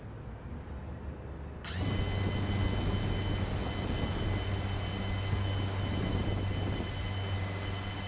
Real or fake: real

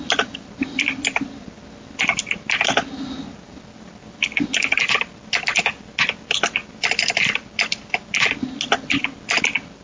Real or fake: real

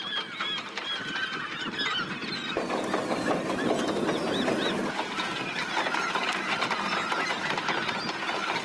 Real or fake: real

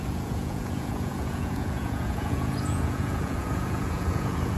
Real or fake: fake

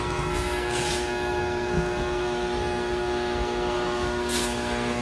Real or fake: fake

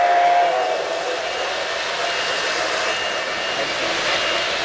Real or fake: real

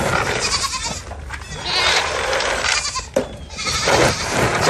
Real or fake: real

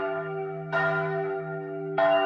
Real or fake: fake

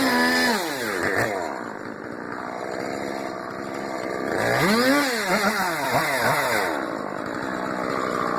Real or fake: real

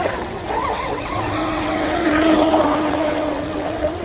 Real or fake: fake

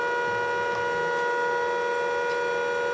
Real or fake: real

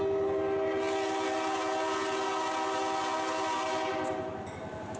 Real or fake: real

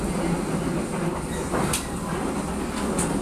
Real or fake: real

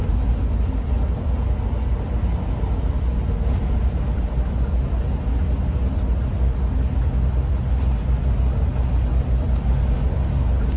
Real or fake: real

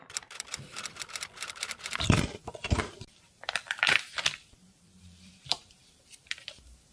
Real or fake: fake